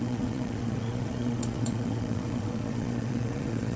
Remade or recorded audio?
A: remade